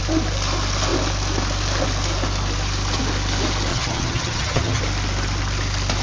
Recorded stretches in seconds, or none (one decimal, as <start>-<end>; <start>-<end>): 0.0-3.7; 4.8-6.0